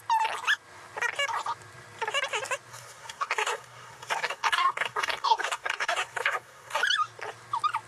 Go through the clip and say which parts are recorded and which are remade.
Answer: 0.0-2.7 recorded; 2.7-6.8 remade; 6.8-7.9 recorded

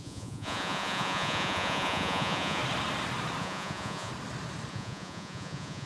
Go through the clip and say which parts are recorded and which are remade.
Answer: 0.0-2.6 remade; 2.6-3.4 recorded; 3.4-4.1 remade; 4.1-4.7 recorded; 4.7-5.9 remade

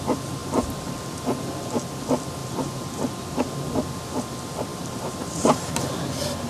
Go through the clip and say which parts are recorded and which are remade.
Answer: 0.0-2.4 recorded; 2.4-3.1 remade; 3.1-4.7 recorded; 4.7-5.7 remade; 5.7-6.5 recorded